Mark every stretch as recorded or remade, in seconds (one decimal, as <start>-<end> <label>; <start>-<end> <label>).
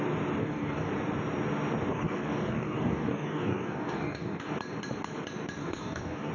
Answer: 0.0-0.4 recorded; 0.4-0.9 remade; 0.9-1.9 recorded; 1.9-4.5 remade; 4.5-5.6 recorded; 5.6-6.3 remade